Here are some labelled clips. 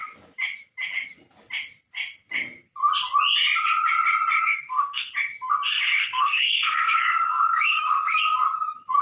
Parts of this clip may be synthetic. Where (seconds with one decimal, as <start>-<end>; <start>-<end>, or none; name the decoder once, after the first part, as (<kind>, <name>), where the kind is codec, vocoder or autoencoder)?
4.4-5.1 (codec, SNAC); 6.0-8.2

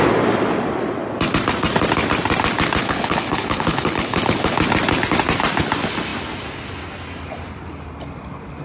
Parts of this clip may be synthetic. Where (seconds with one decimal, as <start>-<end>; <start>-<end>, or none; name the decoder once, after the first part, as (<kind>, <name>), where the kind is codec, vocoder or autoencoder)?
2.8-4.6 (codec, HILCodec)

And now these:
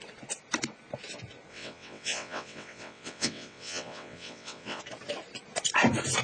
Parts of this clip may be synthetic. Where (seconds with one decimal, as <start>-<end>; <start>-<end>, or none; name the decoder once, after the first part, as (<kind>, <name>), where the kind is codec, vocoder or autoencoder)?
1.5-4.8 (vocoder, WaveNeXt)